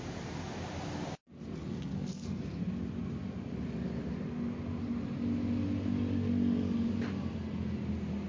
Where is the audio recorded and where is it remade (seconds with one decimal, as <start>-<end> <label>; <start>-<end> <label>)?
0.0-1.7 recorded; 1.7-2.4 remade; 2.4-8.3 recorded